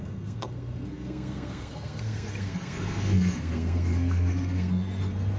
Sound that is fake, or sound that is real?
fake